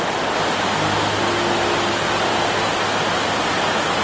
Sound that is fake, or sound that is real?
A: real